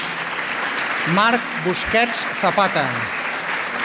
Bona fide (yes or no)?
yes